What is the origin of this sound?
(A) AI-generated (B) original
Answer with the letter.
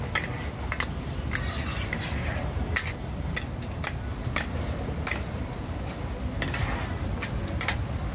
B